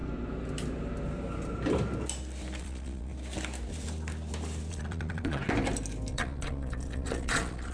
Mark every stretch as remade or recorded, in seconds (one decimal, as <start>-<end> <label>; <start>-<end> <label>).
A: 0.0-2.6 recorded; 2.6-3.1 remade; 3.1-4.7 recorded; 4.7-5.4 remade; 5.4-6.1 recorded; 6.1-7.7 remade